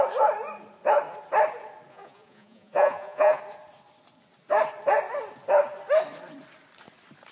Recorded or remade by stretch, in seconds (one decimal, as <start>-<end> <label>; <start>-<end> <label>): 0.0-1.9 recorded; 1.9-3.4 remade; 3.4-7.3 recorded